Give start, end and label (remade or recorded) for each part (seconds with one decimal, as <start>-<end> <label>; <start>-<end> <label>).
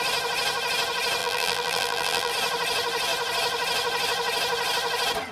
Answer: 0.0-1.2 recorded; 1.2-2.3 remade; 2.3-5.3 recorded